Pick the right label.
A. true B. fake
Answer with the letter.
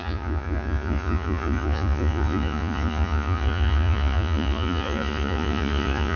B